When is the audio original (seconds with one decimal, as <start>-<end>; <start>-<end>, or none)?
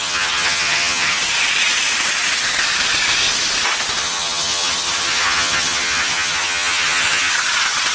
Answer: 1.2-4.0; 7.3-7.9